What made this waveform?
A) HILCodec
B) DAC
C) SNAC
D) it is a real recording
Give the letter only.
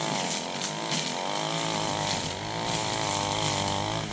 D